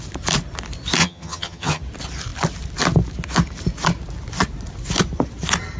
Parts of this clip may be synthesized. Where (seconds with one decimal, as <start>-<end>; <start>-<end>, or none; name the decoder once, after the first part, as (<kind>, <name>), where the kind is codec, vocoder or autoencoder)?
1.0-1.8 (vocoder, HiFi-GAN)